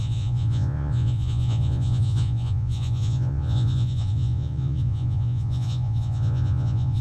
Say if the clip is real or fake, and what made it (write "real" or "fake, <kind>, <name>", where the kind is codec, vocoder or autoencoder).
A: fake, vocoder, Vocos